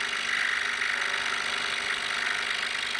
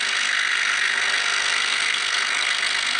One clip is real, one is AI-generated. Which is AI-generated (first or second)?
second